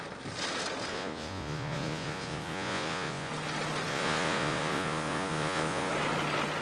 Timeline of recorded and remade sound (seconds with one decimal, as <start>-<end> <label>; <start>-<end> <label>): 0.0-0.9 recorded; 0.9-3.3 remade; 3.3-3.9 recorded; 3.9-5.9 remade; 5.9-6.6 recorded